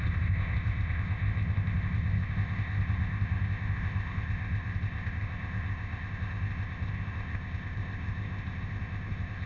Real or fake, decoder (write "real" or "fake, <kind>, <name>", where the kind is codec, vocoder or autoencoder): fake, codec, ZipCodec